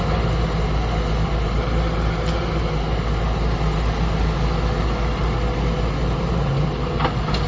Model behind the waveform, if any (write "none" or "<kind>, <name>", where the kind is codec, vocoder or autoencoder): none